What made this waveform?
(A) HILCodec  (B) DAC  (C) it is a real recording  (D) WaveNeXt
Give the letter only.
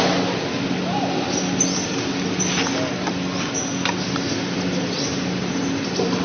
C